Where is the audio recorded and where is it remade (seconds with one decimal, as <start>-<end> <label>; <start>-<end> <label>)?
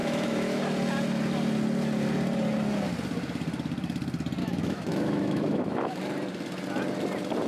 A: 0.0-0.6 remade; 0.6-4.4 recorded; 4.4-6.0 remade; 6.0-7.5 recorded